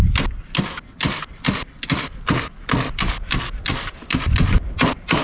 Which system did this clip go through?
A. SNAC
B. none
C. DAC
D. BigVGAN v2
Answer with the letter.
B